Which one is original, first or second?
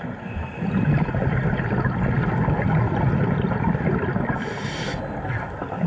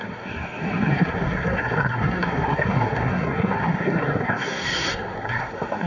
first